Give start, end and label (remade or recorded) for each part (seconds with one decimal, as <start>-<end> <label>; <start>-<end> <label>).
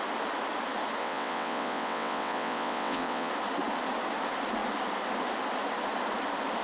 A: 0.0-1.0 recorded; 1.0-3.3 remade; 3.3-6.6 recorded